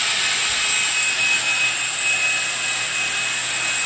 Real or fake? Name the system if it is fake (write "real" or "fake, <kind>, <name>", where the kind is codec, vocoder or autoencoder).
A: real